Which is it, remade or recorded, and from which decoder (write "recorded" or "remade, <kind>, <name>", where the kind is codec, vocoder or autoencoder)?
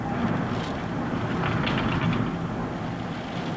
recorded